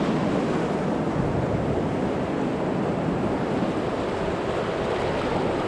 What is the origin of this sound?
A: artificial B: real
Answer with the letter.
B